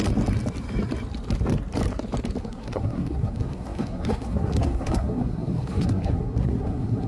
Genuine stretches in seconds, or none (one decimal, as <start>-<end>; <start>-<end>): 0.0-2.4